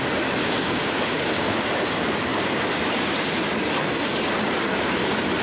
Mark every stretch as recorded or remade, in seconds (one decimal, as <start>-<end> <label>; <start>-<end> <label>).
0.0-0.4 recorded; 0.4-1.6 remade; 1.6-5.4 recorded